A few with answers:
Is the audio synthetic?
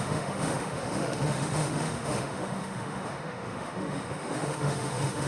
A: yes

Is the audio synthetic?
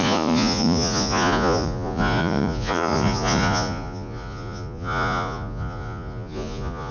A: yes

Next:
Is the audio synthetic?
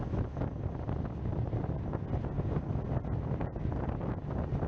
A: no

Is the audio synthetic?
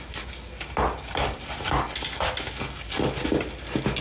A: no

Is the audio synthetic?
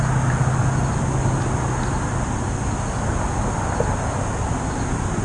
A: no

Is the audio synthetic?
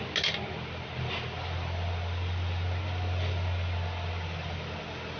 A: no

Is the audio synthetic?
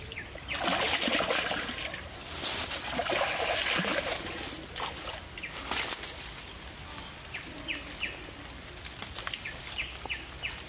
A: no